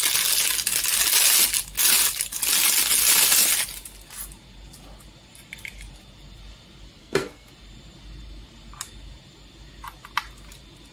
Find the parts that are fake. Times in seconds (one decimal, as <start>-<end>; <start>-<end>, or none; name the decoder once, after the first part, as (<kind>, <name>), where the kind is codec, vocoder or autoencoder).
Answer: 7.0-7.5 (codec, SNAC)